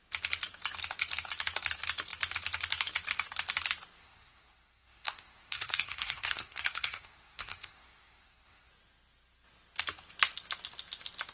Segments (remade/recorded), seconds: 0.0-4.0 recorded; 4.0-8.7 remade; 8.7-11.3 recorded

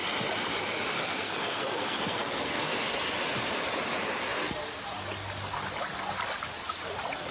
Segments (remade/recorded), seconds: 0.0-0.9 recorded; 0.9-2.6 remade; 2.6-7.3 recorded